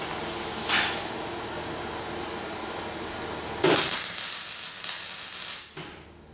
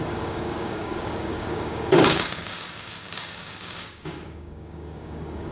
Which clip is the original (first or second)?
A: first